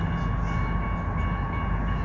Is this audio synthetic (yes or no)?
no